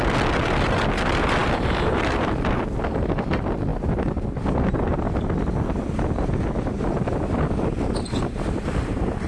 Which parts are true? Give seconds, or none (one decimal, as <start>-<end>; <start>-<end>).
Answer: 0.0-1.4; 2.5-9.3